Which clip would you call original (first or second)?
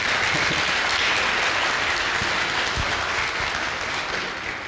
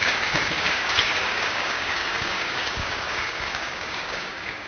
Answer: first